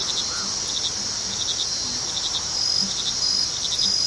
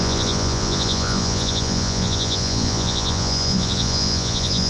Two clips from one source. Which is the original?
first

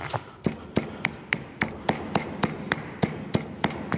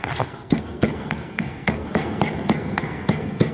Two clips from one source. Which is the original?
first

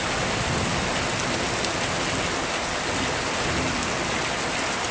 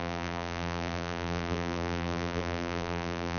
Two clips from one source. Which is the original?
first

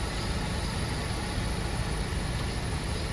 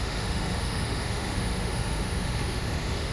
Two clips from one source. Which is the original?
first